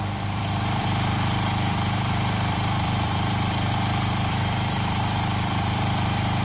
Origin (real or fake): fake